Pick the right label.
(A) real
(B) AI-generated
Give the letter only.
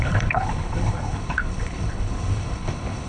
B